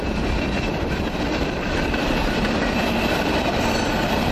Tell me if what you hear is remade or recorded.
remade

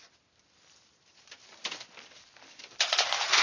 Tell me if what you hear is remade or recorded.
remade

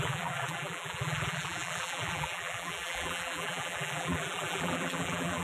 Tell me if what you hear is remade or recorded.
remade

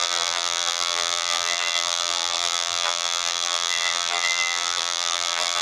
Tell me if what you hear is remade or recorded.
remade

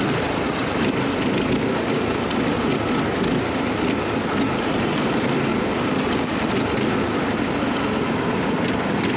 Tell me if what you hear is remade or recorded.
recorded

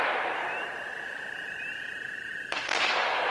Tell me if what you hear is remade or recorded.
remade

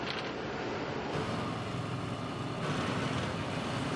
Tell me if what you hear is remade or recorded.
recorded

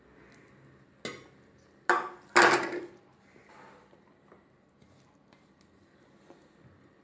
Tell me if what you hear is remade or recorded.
recorded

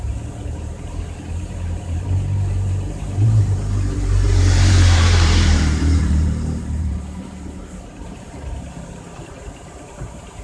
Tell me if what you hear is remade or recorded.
remade